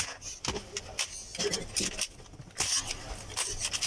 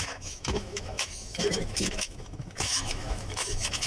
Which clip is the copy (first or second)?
second